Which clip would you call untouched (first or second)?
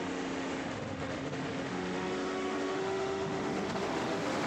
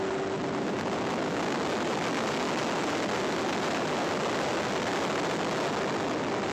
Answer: second